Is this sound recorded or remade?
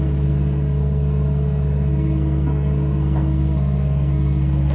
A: remade